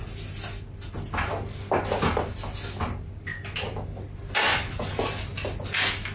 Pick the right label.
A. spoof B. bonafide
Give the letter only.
B